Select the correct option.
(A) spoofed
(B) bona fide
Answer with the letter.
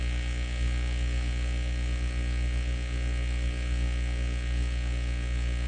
B